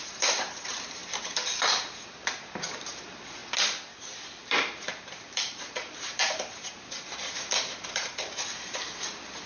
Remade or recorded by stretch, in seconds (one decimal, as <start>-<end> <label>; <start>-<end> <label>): 0.0-1.0 remade; 1.0-1.6 recorded; 1.6-3.4 remade; 3.4-4.4 recorded; 4.4-9.5 remade